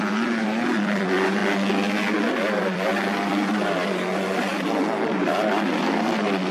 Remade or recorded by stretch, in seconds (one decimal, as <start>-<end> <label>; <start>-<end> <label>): 0.0-1.4 remade; 1.4-2.3 recorded; 2.3-6.5 remade